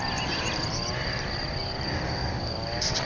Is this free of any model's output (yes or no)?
no